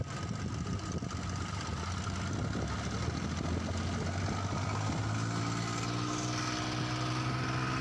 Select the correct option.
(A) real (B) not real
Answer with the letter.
A